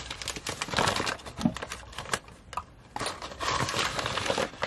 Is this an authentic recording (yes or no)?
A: yes